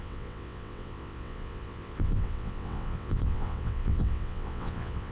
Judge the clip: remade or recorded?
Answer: remade